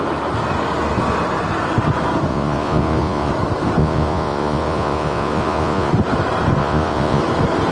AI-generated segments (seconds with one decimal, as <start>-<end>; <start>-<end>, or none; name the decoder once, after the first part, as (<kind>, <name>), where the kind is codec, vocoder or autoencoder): 2.3-3.3 (vocoder, Vocos); 3.8-5.9; 6.6-7.2